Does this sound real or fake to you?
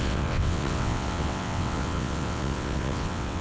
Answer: fake